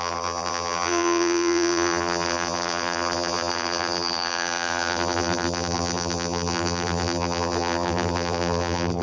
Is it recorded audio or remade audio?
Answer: remade